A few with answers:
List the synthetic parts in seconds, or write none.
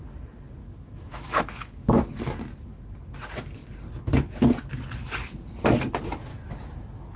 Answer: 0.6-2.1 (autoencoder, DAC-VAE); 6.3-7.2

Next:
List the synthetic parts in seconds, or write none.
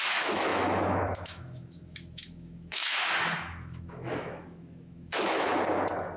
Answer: 0.0-5.5 (autoencoder, DAC-VAE)